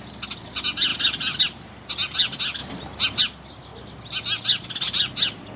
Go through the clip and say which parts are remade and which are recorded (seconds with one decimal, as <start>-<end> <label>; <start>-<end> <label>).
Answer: 0.0-5.6 recorded